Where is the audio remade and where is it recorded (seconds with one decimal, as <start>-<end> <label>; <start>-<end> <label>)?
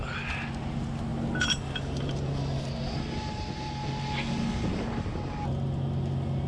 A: 0.0-6.5 recorded